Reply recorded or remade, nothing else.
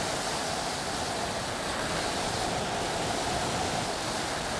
recorded